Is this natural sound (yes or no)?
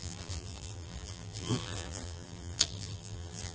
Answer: no